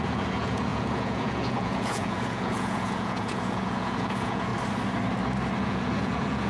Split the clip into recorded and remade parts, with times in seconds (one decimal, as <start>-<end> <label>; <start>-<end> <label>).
0.0-4.5 remade; 4.5-5.6 recorded; 5.6-6.5 remade